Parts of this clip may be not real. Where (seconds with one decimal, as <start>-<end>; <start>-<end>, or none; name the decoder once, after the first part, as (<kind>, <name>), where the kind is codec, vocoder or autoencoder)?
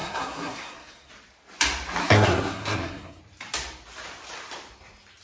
0.0-1.1 (codec, SNAC); 2.0-3.2